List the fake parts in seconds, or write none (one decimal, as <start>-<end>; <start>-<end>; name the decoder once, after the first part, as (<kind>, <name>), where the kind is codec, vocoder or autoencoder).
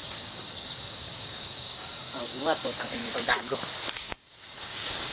0.0-3.0 (codec, DAC); 4.0-5.1